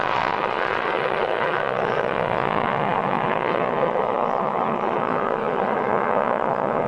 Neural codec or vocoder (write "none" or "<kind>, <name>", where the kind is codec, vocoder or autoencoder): vocoder, Vocos